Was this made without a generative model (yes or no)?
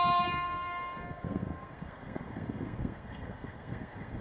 no